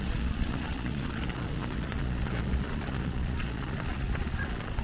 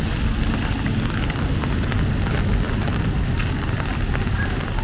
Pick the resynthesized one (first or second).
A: first